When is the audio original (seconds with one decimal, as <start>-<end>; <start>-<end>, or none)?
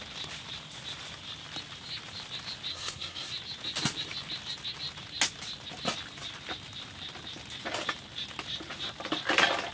0.0-2.7; 3.3-9.7